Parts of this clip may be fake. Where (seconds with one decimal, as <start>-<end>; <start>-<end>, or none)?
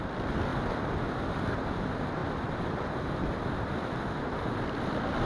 0.0-0.5; 1.7-5.3